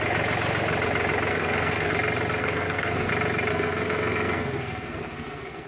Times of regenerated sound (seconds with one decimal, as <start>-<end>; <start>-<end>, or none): 1.3-1.9; 2.4-3.1; 3.5-5.7

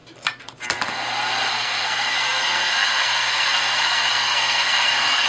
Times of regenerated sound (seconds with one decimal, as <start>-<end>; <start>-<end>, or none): 1.5-5.3